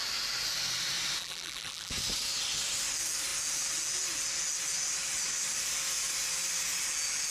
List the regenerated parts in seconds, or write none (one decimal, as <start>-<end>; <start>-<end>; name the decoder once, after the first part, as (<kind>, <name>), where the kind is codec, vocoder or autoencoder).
1.2-1.9 (vocoder, BigVGAN v2)